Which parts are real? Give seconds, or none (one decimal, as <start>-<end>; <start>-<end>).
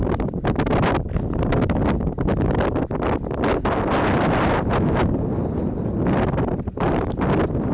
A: 0.0-7.7